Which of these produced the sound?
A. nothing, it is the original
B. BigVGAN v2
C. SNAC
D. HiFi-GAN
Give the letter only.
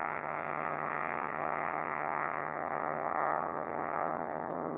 D